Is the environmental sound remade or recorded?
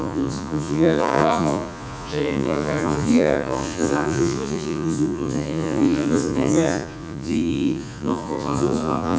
remade